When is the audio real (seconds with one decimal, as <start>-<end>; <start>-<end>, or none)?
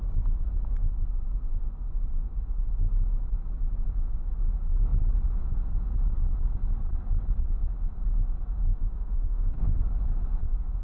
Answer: 0.0-8.7; 9.8-10.8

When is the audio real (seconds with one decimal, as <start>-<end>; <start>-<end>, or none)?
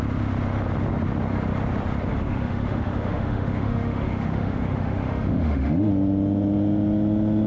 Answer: 0.0-2.1; 5.9-7.5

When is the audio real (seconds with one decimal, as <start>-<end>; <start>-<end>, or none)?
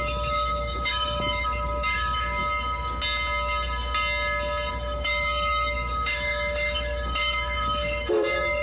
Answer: 2.4-4.7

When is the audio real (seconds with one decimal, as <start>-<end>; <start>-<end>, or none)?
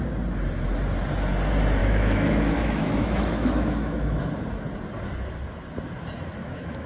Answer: 0.0-1.8; 4.2-6.4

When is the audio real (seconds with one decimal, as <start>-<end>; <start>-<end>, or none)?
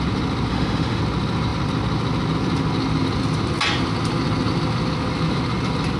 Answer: 0.0-0.5; 1.0-6.0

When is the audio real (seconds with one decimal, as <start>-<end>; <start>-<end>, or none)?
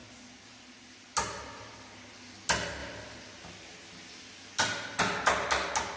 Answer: 0.0-6.0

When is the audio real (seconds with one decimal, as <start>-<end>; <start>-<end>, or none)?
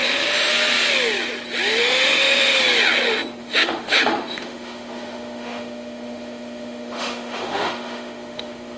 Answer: 0.5-1.8; 2.6-3.4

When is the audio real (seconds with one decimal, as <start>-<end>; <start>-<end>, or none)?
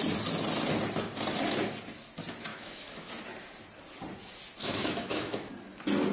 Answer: 0.0-2.5; 3.1-4.6; 5.5-6.1